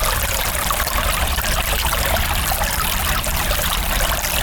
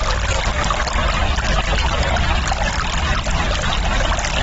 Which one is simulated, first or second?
first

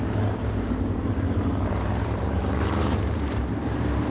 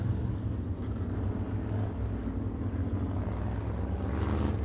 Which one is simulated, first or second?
first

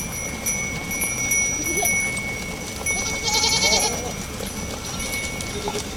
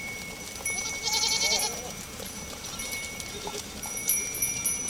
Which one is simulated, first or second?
second